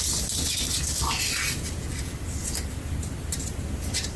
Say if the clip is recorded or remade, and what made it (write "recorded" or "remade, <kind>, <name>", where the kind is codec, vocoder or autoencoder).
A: recorded